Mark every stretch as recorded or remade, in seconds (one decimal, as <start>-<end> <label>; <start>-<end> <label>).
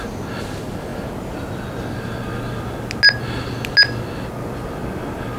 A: 0.0-5.4 recorded